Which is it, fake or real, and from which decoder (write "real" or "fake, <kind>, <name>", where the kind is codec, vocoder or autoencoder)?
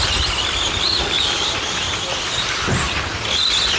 real